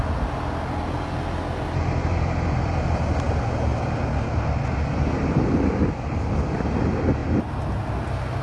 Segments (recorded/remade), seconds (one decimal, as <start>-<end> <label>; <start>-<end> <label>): 0.0-8.4 recorded